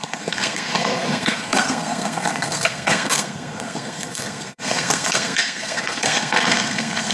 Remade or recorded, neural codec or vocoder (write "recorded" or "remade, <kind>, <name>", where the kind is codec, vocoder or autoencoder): remade, codec, SNAC